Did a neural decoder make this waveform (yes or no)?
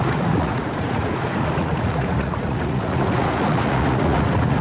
yes